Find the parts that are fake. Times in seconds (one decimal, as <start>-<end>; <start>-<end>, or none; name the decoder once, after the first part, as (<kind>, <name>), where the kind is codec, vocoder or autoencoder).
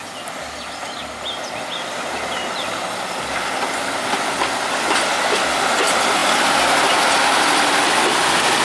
none